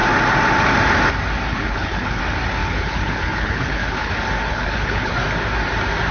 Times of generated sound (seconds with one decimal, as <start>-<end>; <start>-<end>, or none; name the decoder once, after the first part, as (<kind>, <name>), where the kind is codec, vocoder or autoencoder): 1.5-2.2 (codec, HILCodec); 2.6-4.1; 4.5-5.1